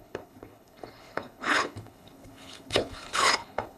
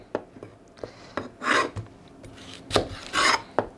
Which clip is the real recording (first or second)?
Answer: second